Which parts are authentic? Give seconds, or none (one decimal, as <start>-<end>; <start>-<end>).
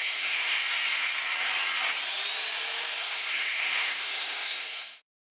0.6-3.0